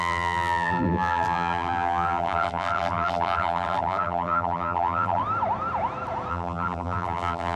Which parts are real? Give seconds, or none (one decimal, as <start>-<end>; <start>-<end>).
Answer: 5.2-6.3